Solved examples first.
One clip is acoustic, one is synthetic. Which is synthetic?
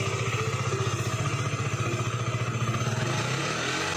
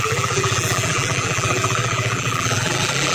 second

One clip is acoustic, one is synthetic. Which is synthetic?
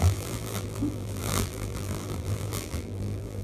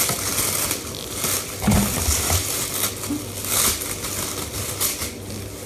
first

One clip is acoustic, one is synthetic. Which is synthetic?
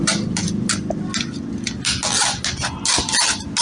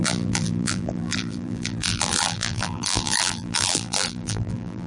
second